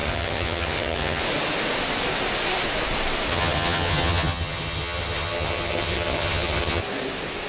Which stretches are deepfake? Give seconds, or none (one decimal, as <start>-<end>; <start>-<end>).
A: 0.0-1.2; 3.3-6.8